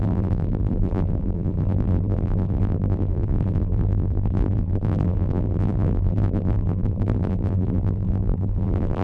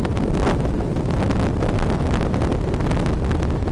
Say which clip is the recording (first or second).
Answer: second